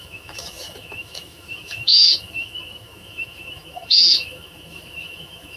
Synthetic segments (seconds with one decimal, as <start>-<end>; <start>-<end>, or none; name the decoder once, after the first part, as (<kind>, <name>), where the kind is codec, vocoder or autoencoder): 0.0-5.6 (autoencoder, DAC-VAE)